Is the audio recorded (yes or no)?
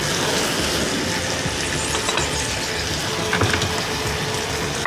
yes